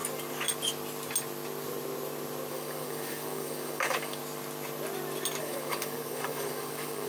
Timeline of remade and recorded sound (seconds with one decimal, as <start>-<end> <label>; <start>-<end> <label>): 0.0-2.5 recorded; 2.5-4.2 remade; 4.2-5.4 recorded; 5.4-7.1 remade